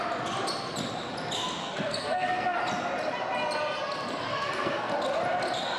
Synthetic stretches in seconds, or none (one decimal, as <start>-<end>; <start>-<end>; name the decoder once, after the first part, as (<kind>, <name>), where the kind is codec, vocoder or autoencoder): 1.6-2.6 (codec, SNAC); 4.3-4.9